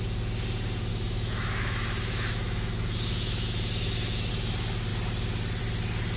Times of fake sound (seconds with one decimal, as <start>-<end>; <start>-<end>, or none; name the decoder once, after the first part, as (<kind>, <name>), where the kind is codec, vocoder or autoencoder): 0.9-4.3 (autoencoder, DAC-VAE)